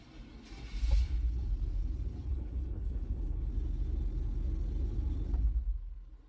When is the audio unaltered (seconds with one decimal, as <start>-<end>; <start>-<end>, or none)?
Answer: 0.0-2.3; 3.5-6.3